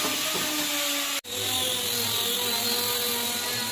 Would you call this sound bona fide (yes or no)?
yes